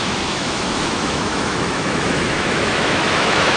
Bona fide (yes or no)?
no